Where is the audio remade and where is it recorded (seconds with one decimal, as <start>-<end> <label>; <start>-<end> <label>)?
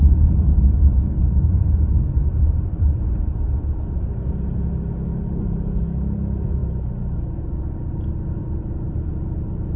0.0-2.3 recorded; 2.3-3.1 remade; 3.1-8.4 recorded; 8.4-9.1 remade; 9.1-9.8 recorded